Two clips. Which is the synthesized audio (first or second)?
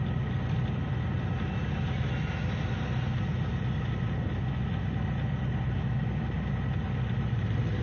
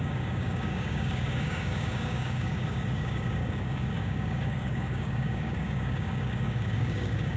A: second